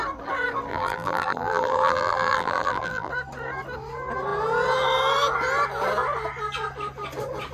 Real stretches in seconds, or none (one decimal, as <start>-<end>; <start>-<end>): 0.0-0.7; 3.1-7.5